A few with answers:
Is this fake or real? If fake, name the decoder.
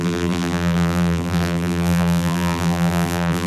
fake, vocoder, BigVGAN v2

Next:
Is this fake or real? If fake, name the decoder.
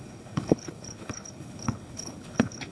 fake, codec, HILCodec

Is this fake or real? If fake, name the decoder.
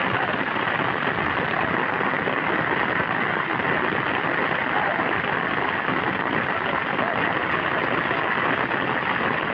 real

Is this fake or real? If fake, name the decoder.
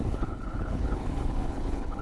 fake, codec, HILCodec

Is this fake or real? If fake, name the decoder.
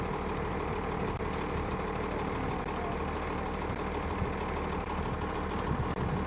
real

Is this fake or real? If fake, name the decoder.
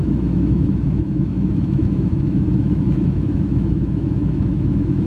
fake, autoencoder, DAC-VAE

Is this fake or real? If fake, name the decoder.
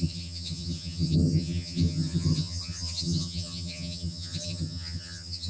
fake, vocoder, HiFi-GAN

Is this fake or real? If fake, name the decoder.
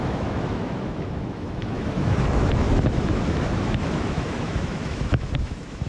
fake, autoencoder, DAC-VAE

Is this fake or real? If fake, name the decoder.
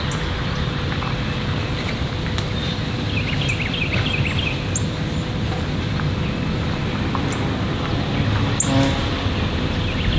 real